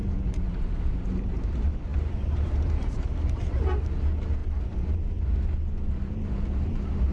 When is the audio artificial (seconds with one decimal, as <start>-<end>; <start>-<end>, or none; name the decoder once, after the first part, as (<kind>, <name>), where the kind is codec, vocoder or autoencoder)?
0.0-0.9 (vocoder, BigVGAN v2); 1.9-3.8